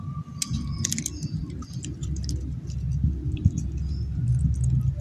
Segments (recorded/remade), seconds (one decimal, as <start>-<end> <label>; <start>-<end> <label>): 0.0-5.0 recorded